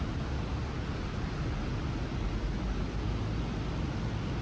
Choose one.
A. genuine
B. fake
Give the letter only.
A